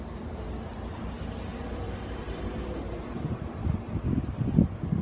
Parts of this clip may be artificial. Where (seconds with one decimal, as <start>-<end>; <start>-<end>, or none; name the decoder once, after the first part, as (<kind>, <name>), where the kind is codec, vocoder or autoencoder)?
1.5-3.9 (vocoder, BigVGAN v2)